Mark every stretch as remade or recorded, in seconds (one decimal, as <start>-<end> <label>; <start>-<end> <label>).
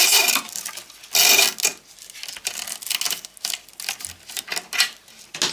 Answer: 0.0-5.5 recorded